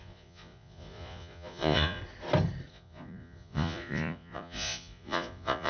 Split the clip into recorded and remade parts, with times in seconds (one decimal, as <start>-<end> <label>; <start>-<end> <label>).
0.0-2.0 remade; 2.0-2.7 recorded; 2.7-5.7 remade